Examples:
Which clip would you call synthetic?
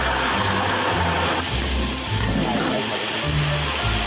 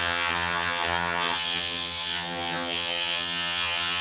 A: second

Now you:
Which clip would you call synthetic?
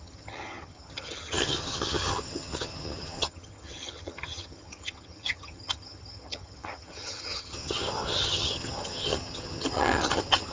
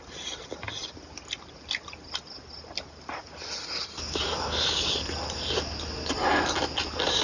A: first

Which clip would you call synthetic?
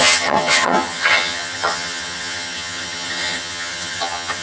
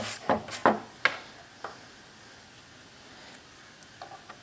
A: first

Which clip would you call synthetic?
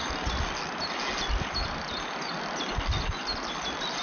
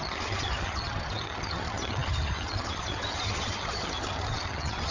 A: second